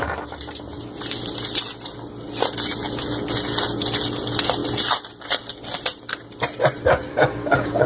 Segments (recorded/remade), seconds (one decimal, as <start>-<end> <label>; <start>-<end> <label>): 0.0-7.1 recorded; 7.1-7.9 remade